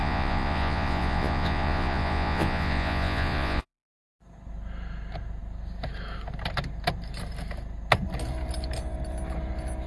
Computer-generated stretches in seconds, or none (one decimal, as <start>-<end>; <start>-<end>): 0.0-4.2